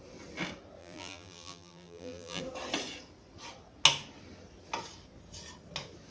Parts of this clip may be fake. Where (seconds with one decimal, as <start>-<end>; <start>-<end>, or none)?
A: 0.8-2.4